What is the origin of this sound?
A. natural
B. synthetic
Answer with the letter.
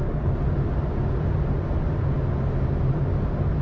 A